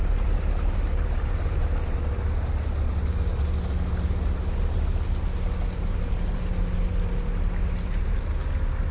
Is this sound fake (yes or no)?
no